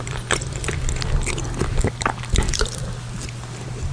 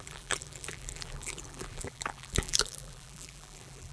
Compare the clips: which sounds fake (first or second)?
second